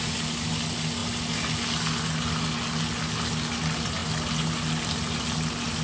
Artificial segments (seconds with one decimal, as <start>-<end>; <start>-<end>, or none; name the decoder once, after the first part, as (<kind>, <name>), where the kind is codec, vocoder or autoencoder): none